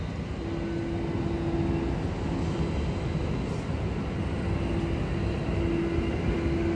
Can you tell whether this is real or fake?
real